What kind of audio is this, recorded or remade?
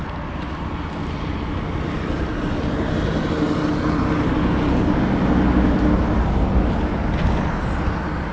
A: recorded